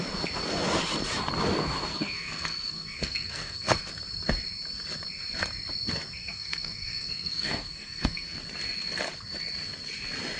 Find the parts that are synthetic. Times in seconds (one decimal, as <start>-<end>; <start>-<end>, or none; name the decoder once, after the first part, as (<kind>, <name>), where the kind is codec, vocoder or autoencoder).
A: 1.9-3.8 (codec, SNAC); 6.2-8.4